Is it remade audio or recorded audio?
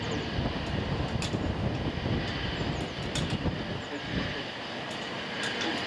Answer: remade